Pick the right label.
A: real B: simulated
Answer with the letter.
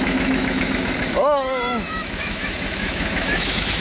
B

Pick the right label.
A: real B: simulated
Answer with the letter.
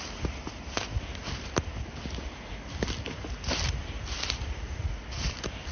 A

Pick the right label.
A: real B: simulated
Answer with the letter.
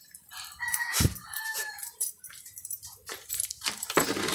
B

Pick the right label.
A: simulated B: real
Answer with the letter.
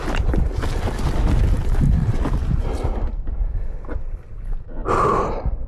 B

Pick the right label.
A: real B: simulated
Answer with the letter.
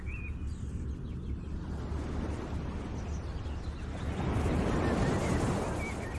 A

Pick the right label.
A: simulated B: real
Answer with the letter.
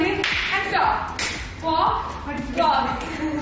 B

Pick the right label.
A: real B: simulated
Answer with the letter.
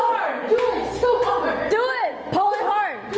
A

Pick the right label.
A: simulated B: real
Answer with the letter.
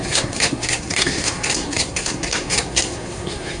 A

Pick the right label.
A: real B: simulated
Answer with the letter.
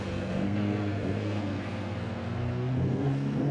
B